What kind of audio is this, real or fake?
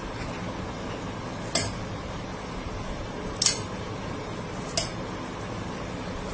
real